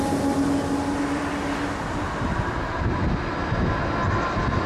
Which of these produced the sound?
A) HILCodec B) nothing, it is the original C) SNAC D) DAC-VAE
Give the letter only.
B